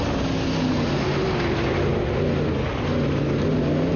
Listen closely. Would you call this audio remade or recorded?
recorded